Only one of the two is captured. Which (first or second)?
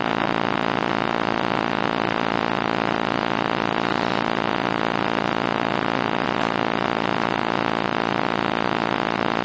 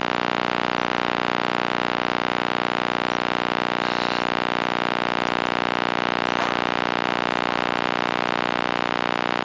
second